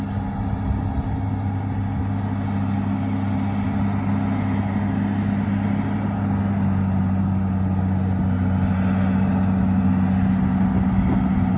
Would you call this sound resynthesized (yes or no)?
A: no